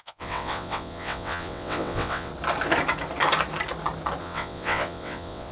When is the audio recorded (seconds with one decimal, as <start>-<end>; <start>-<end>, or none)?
2.3-4.2